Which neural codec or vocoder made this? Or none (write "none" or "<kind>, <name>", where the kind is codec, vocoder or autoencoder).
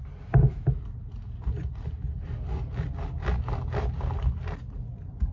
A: none